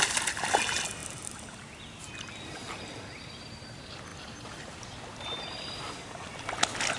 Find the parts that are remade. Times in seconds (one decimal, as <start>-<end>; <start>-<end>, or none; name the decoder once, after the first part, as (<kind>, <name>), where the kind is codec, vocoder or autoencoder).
none